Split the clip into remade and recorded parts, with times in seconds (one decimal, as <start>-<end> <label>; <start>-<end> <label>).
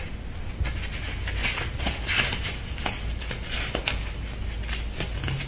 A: 0.0-1.4 recorded; 1.4-2.0 remade; 2.0-5.5 recorded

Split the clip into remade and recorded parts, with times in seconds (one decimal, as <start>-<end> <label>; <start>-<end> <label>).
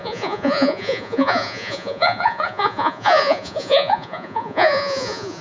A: 0.0-5.4 remade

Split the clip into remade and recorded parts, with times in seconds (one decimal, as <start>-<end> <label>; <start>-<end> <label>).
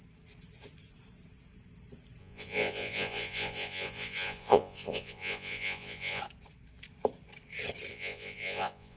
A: 0.0-2.2 recorded; 2.2-6.2 remade; 6.2-7.9 recorded; 7.9-9.0 remade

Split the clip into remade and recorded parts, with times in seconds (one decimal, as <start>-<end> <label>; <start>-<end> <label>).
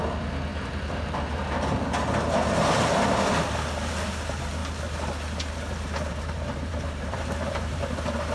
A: 0.0-0.5 recorded; 0.5-1.5 remade; 1.5-6.1 recorded; 6.1-7.8 remade; 7.8-8.3 recorded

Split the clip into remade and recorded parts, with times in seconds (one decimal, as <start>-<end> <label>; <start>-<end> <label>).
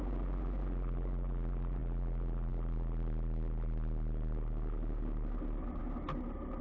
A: 0.0-6.6 recorded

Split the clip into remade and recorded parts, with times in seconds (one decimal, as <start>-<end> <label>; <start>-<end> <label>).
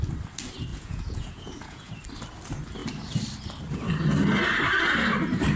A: 0.0-0.7 recorded; 0.7-1.9 remade; 1.9-5.6 recorded